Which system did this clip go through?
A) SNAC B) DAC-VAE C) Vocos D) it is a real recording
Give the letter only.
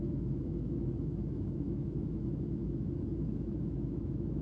B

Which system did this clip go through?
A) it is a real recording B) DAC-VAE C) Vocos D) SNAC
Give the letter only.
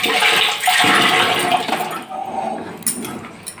A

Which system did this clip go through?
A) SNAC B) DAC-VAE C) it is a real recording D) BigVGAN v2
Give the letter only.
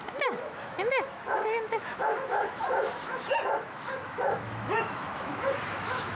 B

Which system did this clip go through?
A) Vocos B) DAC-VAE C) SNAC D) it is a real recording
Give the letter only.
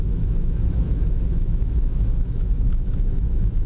B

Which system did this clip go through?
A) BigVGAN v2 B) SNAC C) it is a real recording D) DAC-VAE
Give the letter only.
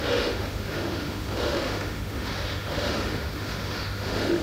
D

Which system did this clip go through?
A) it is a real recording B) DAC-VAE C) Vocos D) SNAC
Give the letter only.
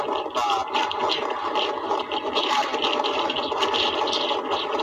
A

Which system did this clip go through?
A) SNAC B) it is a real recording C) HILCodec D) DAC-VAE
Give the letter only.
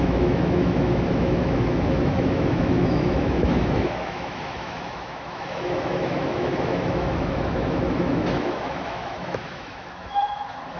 D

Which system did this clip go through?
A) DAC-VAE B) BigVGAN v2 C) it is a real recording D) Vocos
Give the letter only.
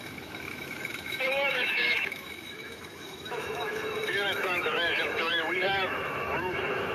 A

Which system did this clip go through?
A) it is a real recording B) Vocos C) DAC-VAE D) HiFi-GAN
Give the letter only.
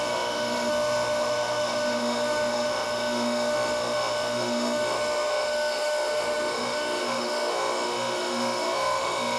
C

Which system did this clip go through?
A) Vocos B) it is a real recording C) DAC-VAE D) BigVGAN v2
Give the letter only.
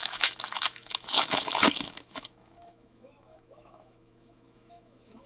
C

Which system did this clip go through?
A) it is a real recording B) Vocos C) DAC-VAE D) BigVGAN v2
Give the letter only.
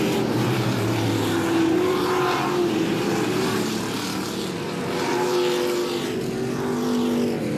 A